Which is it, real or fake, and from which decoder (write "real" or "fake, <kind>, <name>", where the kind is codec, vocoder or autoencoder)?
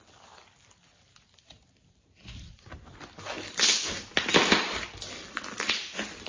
real